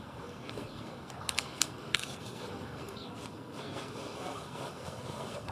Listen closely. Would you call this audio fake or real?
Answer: fake